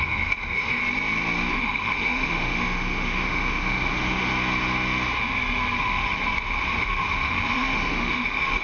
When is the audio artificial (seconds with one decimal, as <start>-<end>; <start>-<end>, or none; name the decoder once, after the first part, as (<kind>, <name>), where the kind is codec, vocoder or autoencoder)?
0.0-0.8 (autoencoder, DAC-VAE); 1.5-4.3; 5.8-6.2; 6.8-8.6